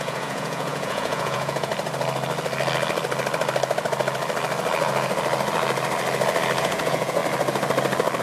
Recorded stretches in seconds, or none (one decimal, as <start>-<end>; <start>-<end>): 1.7-6.6; 7.2-8.2